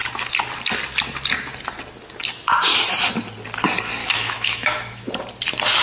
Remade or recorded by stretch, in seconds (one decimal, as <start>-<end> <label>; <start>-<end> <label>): 0.0-4.0 recorded; 4.0-5.1 remade; 5.1-5.8 recorded